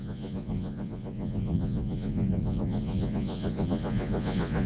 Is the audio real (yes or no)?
no